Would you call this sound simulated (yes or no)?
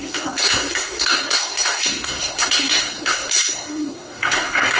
yes